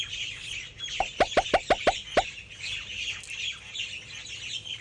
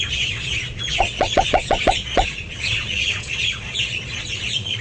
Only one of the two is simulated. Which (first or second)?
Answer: second